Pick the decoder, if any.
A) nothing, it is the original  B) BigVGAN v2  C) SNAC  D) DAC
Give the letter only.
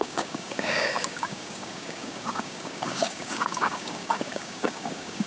D